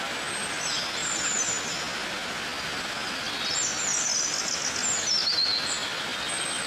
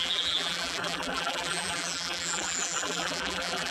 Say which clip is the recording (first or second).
first